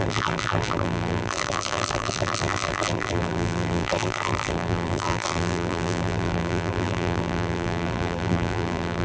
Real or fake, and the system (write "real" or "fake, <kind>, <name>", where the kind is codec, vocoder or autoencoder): fake, vocoder, BigVGAN v2